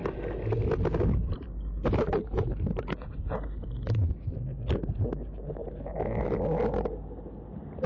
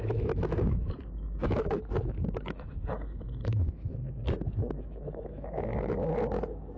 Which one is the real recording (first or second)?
first